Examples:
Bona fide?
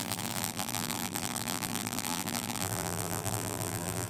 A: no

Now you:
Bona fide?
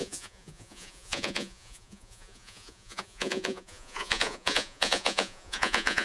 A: no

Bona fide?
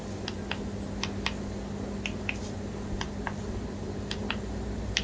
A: yes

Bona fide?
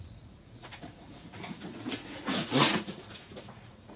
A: no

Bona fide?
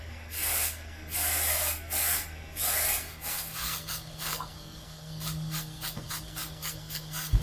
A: no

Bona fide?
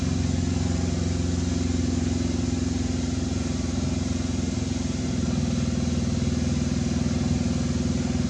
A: yes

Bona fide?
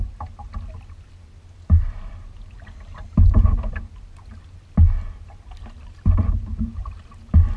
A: yes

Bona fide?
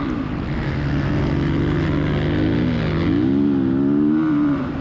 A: yes